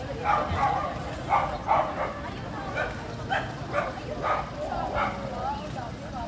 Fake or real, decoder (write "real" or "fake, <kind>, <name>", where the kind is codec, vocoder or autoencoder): real